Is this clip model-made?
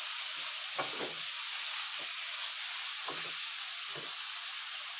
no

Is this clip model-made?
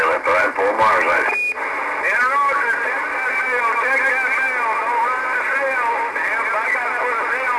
no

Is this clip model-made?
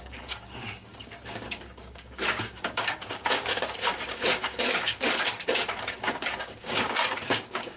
yes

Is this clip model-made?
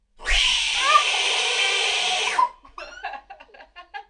yes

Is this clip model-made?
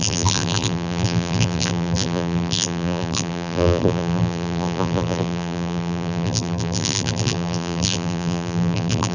yes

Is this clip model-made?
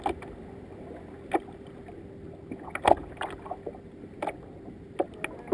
no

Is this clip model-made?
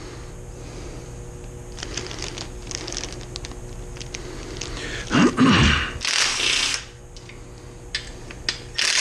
no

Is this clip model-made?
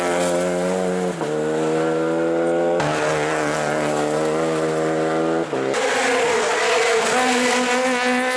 no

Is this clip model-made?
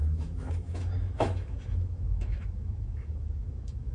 yes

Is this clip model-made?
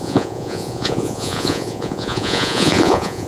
yes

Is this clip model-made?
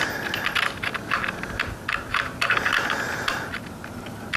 no